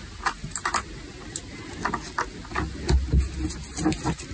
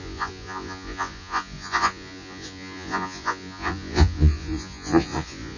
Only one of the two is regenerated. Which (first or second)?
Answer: second